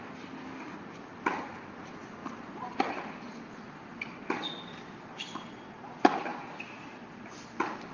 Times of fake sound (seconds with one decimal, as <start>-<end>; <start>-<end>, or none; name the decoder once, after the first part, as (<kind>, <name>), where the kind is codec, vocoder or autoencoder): none